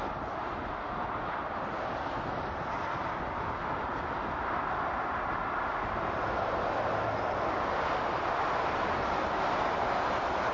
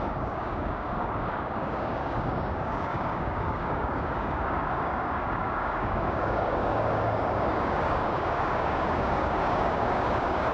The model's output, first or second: second